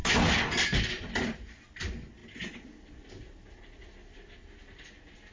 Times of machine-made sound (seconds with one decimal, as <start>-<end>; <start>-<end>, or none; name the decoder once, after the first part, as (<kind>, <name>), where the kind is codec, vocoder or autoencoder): none